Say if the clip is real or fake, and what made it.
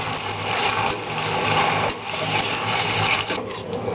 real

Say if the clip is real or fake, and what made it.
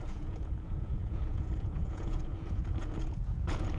fake, vocoder, Vocos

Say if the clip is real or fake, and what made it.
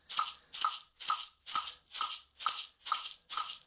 real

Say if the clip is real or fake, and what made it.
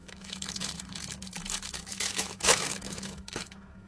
fake, autoencoder, DAC-VAE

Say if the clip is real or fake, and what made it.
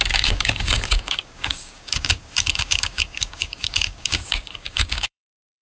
fake, codec, DAC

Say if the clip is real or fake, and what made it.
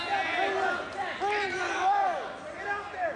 real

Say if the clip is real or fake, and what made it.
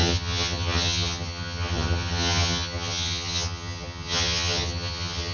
fake, vocoder, HiFi-GAN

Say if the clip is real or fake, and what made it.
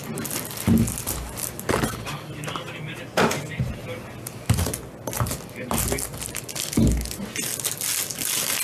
real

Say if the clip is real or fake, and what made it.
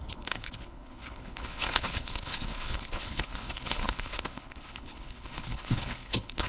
fake, codec, HILCodec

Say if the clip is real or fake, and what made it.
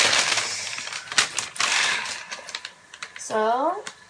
real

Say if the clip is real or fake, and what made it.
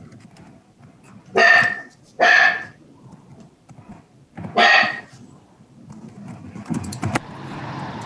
fake, vocoder, BigVGAN v2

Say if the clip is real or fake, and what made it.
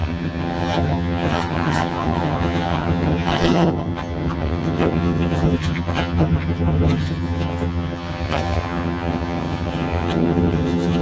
fake, vocoder, HiFi-GAN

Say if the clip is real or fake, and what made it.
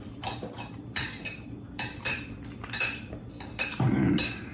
fake, vocoder, BigVGAN v2